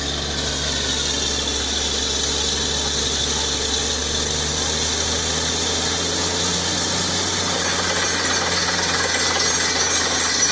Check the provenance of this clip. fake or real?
real